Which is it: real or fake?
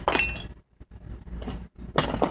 real